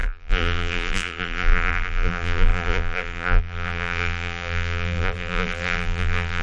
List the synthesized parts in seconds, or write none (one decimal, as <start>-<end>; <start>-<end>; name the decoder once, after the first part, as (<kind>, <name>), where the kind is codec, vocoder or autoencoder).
0.0-6.4 (vocoder, BigVGAN v2)